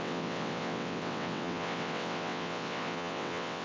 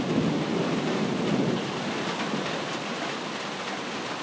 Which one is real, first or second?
second